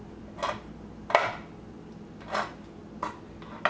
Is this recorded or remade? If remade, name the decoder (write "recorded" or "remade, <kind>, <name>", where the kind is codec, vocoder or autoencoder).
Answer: recorded